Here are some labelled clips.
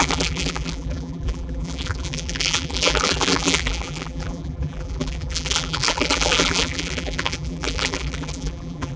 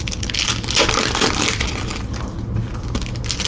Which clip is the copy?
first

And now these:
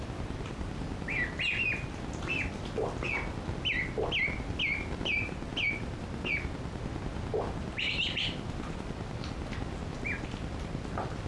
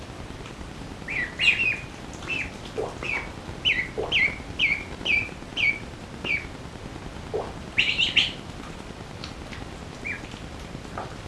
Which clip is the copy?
second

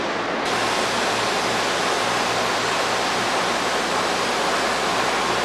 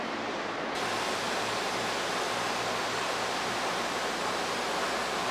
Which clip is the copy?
second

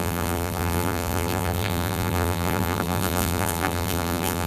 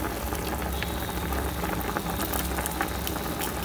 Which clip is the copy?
first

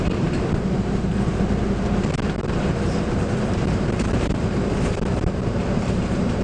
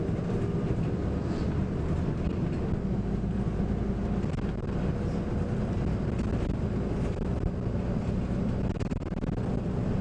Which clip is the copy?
first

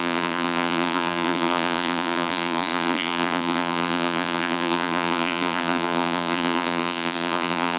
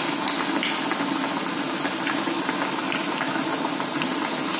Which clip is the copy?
first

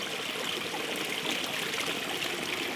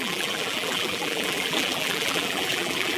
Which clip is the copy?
second